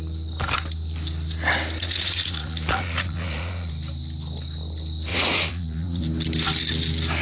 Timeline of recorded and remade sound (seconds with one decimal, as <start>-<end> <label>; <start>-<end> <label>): 0.0-1.8 recorded; 1.8-3.7 remade; 3.7-5.1 recorded; 5.1-6.0 remade; 6.0-7.2 recorded